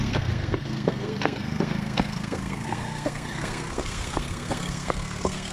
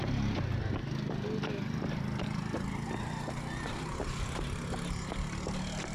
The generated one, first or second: first